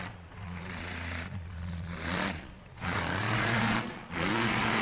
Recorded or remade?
remade